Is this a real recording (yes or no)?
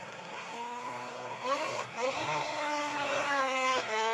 no